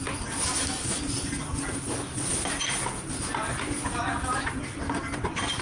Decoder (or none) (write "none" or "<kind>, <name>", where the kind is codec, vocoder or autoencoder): none